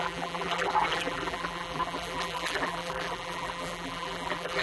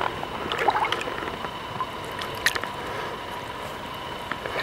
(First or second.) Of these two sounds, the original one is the second